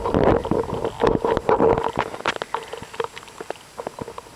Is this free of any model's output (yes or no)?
yes